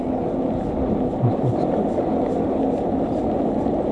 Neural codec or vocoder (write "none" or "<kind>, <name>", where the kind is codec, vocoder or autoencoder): none